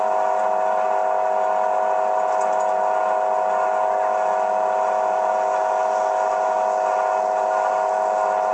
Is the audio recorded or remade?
recorded